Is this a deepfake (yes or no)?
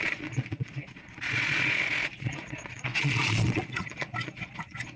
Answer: yes